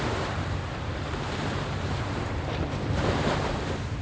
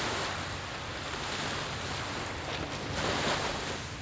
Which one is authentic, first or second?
second